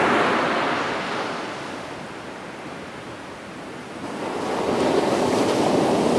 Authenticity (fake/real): real